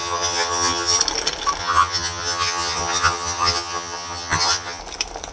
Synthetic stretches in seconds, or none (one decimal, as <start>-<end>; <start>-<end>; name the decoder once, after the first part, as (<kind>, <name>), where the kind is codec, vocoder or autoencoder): 0.0-1.0 (vocoder, HiFi-GAN); 1.6-4.8